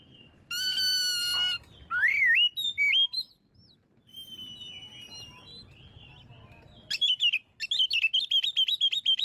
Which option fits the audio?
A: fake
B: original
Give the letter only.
B